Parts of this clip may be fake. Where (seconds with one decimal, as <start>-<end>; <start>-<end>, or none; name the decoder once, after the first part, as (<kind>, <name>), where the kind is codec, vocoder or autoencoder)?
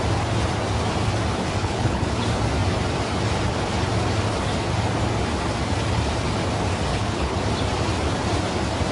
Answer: 1.6-2.2 (codec, HILCodec); 6.9-7.4